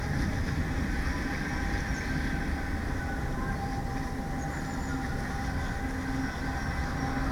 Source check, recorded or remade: recorded